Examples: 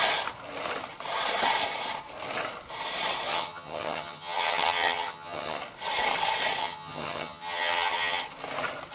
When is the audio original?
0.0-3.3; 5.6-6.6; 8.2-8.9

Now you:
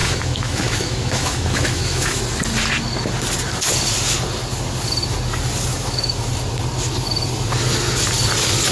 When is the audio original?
2.2-5.7; 6.3-8.7

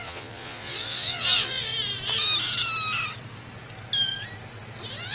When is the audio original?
1.7-5.1